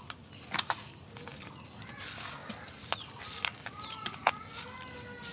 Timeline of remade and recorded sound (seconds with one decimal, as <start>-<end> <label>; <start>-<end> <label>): 0.0-5.3 recorded